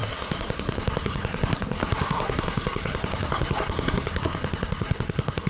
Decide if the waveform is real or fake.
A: fake